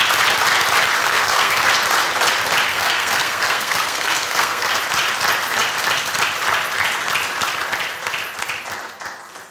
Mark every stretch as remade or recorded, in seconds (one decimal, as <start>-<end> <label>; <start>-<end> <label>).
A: 0.0-1.0 recorded; 1.0-1.7 remade; 1.7-2.7 recorded; 2.7-4.8 remade; 4.8-9.5 recorded